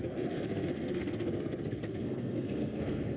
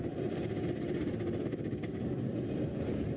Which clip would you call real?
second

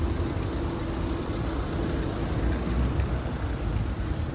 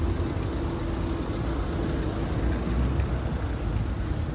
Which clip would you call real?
second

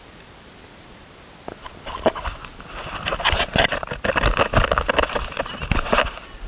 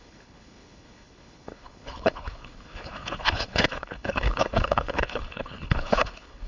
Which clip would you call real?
first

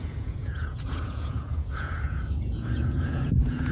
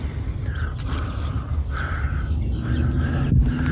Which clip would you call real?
second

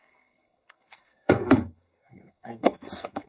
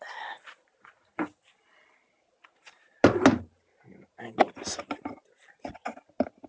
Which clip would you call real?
second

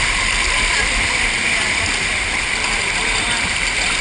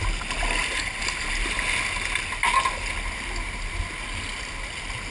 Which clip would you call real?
second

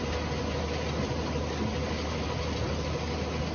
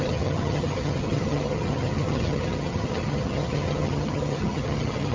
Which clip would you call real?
first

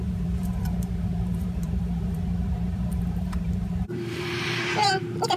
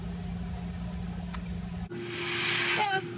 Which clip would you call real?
second